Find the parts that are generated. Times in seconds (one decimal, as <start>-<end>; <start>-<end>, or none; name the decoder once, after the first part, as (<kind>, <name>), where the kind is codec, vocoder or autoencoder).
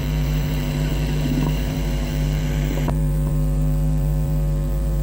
0.0-5.0 (vocoder, BigVGAN v2)